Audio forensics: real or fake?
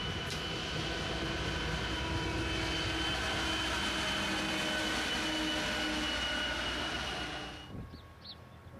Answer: real